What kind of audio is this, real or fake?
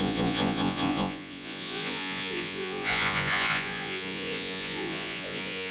fake